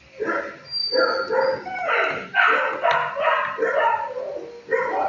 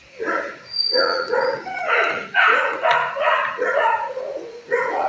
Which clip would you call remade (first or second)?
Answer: second